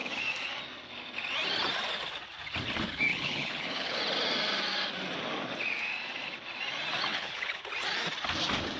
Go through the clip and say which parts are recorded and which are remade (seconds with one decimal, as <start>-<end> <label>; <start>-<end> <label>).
0.0-3.1 recorded; 3.1-4.0 remade; 4.0-7.1 recorded; 7.1-7.6 remade; 7.6-8.8 recorded